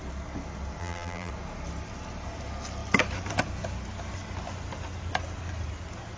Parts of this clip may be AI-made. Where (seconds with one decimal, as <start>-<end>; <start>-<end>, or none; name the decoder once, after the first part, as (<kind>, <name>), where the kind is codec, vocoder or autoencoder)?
0.8-1.3 (vocoder, BigVGAN v2)